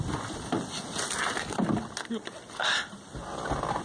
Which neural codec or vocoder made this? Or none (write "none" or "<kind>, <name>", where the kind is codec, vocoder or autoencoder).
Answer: none